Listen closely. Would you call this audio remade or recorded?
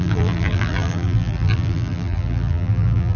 remade